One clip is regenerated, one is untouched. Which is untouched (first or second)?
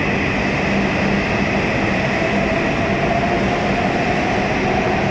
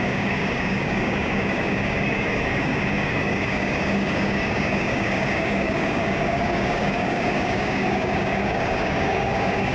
first